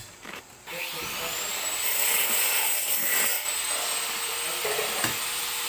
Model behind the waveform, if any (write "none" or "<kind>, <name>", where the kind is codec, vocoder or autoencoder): none